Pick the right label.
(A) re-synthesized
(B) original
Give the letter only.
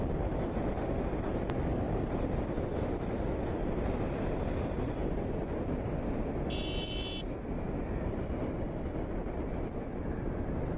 B